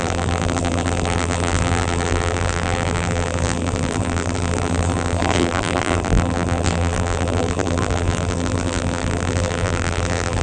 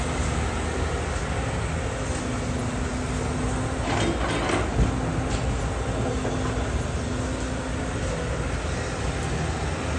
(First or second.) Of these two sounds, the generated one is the first